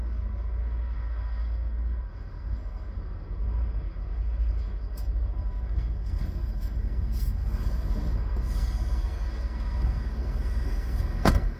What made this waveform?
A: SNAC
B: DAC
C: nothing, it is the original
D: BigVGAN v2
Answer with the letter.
A